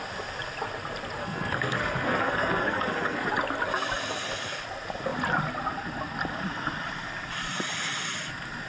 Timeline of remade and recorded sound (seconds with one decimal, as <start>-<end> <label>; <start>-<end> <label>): 0.0-1.2 recorded; 1.2-3.3 remade; 3.3-8.7 recorded